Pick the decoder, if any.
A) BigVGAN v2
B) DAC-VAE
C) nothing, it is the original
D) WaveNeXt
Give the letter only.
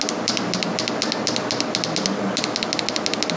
C